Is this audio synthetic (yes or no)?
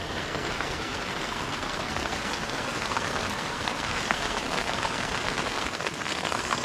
yes